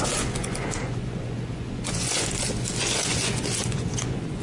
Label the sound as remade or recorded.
remade